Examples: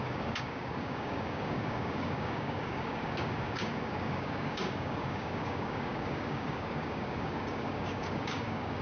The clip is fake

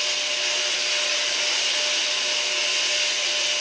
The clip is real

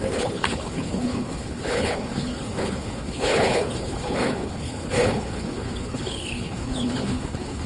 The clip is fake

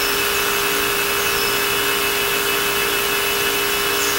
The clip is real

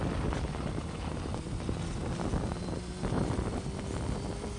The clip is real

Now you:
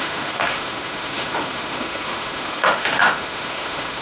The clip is fake